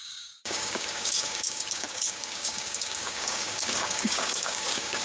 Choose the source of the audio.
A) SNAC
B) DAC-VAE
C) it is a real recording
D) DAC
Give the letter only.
D